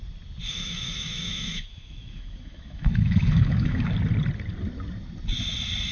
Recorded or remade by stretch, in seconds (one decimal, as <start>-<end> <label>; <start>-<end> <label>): 0.0-0.5 recorded; 0.5-3.9 remade; 3.9-5.9 recorded

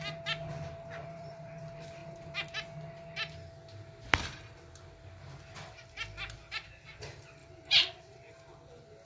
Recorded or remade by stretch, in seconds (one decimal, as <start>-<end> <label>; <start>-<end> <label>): 0.0-1.0 recorded; 1.0-1.6 remade; 1.6-7.4 recorded; 7.4-8.3 remade; 8.3-9.1 recorded

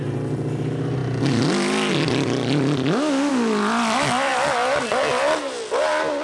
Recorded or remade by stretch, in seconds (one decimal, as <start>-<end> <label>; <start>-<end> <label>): 0.0-6.2 recorded

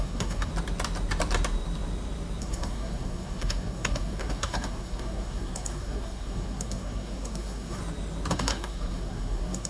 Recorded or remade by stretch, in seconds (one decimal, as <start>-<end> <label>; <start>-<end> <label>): 0.0-0.5 remade; 0.5-2.4 recorded; 2.4-7.8 remade; 7.8-8.3 recorded; 8.3-9.7 remade

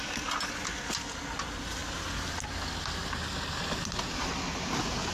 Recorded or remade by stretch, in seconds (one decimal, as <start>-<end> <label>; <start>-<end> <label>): 0.0-5.1 recorded